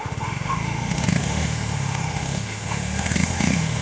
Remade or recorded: remade